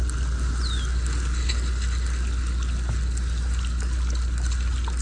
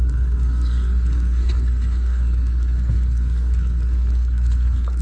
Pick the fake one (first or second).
second